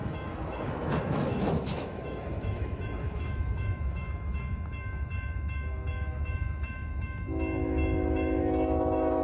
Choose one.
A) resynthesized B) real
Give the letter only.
A